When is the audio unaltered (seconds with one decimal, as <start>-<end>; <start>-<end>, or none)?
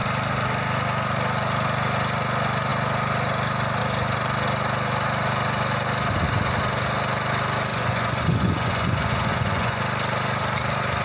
0.0-7.7; 9.8-11.0